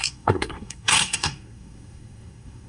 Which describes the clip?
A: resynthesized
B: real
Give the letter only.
A